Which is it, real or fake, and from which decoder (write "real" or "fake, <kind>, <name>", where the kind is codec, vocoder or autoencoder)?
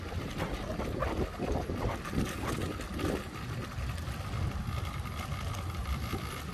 real